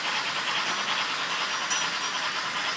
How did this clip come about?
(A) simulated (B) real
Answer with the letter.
B